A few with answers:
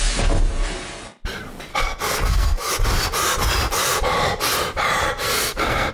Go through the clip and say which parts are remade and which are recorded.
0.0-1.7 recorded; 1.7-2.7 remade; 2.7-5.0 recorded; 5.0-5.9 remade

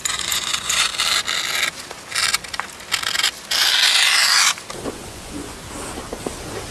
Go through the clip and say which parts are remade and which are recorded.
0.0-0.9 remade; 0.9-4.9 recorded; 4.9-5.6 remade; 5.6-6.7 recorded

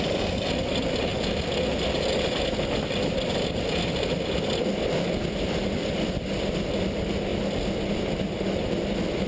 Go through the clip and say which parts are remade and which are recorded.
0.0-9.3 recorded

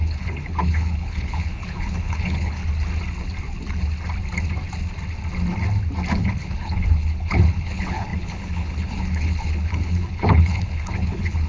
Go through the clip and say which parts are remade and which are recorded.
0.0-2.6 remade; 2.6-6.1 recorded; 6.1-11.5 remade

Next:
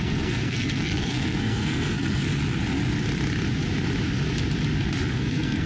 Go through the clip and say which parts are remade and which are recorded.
0.0-2.3 remade; 2.3-5.1 recorded; 5.1-5.7 remade

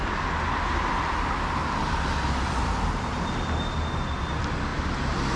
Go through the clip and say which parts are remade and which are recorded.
0.0-5.4 recorded

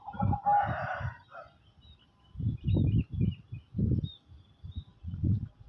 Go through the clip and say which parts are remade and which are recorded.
0.0-4.9 recorded; 4.9-5.7 remade